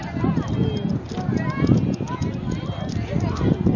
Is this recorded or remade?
recorded